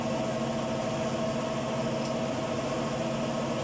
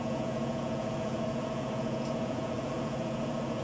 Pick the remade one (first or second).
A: second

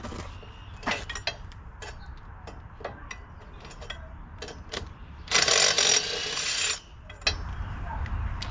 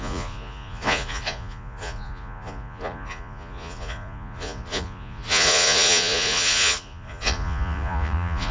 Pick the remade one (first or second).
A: second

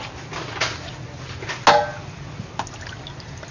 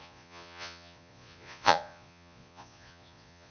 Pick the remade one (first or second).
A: second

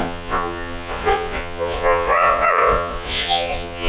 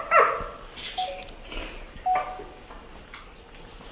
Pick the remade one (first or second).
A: first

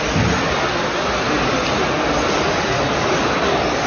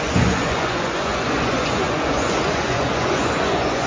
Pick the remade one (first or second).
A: second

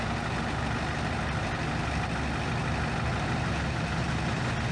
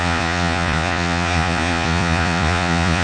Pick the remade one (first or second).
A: second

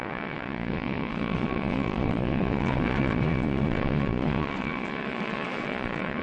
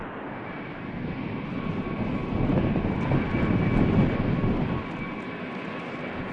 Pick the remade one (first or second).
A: first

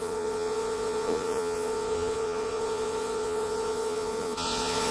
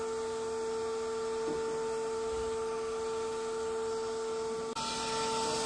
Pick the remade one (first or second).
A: first